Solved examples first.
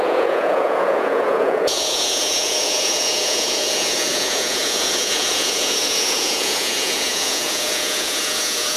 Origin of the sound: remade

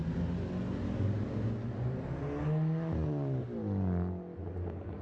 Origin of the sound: recorded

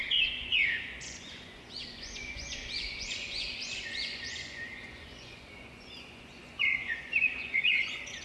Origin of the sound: remade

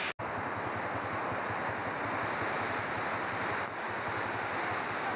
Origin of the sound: recorded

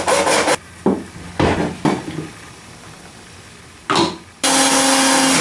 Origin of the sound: recorded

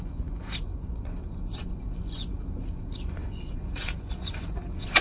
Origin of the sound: remade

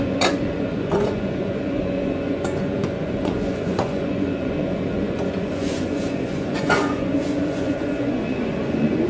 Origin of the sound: remade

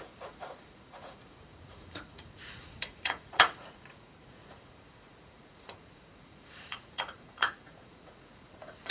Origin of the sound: remade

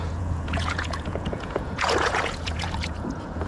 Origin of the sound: remade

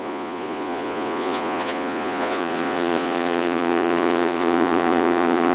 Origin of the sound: remade